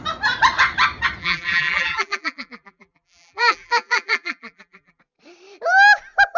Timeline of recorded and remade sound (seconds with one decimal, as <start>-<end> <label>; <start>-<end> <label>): 0.0-1.2 recorded; 1.2-5.0 remade; 5.0-6.4 recorded